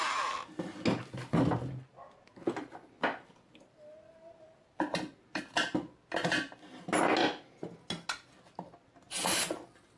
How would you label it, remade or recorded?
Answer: recorded